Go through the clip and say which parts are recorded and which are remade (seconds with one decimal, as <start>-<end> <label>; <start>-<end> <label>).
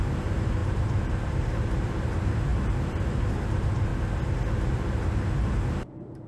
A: 0.0-3.9 remade; 3.9-4.6 recorded; 4.6-6.3 remade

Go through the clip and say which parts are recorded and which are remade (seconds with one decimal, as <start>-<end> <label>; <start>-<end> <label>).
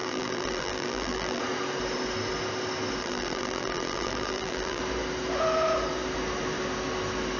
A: 0.0-1.4 remade; 1.4-3.0 recorded; 3.0-4.8 remade; 4.8-7.4 recorded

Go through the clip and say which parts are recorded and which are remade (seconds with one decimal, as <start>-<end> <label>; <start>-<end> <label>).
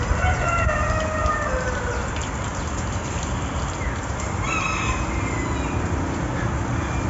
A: 0.0-7.1 recorded